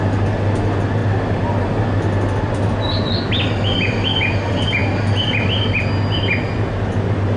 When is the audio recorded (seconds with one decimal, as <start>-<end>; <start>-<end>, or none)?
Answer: 0.0-1.0; 2.0-7.4

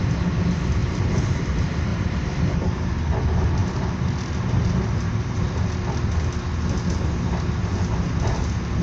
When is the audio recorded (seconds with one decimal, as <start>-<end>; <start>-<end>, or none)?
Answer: 0.0-0.8; 1.4-1.9; 3.0-3.6; 5.7-8.8

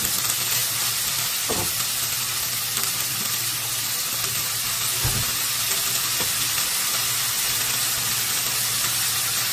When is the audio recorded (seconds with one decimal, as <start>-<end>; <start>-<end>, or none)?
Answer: 0.0-0.6; 1.3-9.5

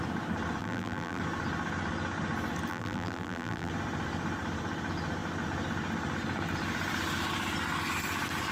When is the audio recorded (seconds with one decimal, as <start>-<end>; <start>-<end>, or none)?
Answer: 0.0-0.6; 1.2-2.7; 3.7-8.5